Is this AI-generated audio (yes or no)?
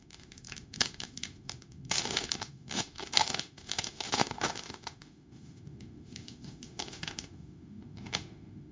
yes